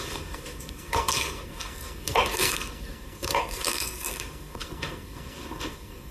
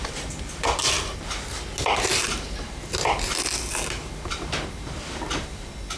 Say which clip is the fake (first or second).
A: first